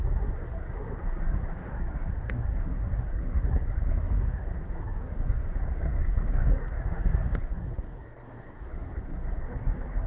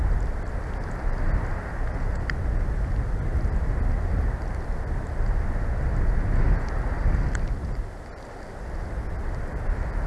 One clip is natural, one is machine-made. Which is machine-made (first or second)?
first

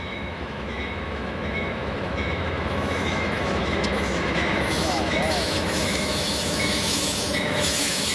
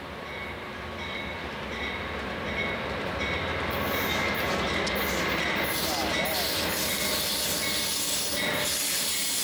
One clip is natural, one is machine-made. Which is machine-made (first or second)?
first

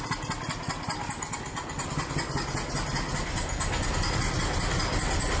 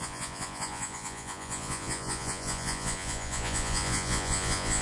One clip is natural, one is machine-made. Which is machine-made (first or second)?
second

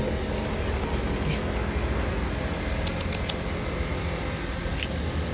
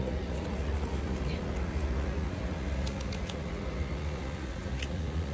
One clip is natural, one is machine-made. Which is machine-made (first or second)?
second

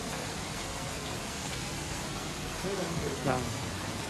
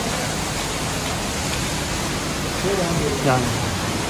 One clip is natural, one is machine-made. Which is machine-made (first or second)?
first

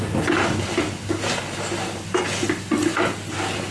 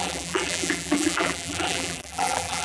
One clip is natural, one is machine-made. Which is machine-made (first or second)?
second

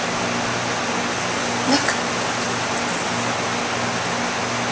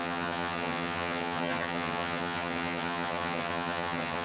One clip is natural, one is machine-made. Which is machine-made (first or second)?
second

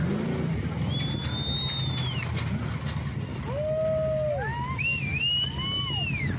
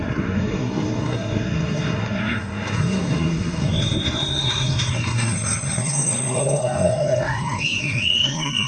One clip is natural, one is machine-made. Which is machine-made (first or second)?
second